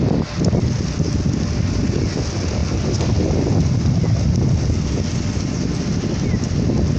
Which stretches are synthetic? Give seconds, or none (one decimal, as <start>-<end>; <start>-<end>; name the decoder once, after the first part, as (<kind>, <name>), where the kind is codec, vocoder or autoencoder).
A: none